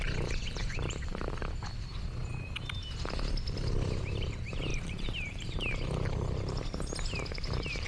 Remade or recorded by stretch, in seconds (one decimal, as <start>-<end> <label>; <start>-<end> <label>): 0.0-0.6 recorded; 0.6-1.4 remade; 1.4-4.7 recorded; 4.7-5.4 remade; 5.4-7.9 recorded